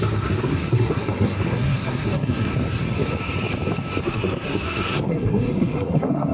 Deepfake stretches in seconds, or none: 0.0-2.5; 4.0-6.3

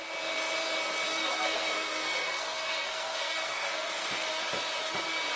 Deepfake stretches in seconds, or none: 1.1-4.3